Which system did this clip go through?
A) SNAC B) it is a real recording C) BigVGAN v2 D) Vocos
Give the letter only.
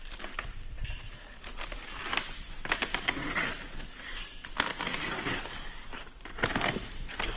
B